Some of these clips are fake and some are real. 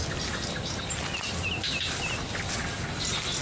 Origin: real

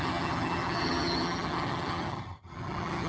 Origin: fake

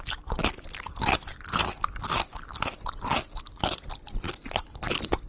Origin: real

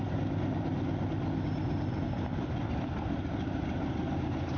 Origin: real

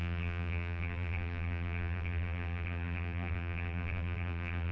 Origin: fake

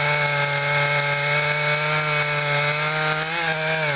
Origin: real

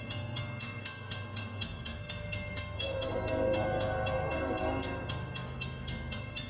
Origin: fake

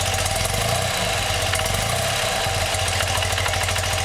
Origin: real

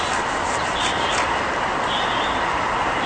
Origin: real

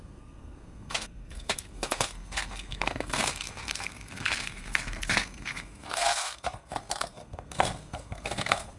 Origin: fake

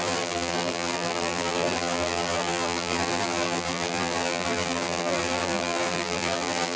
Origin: fake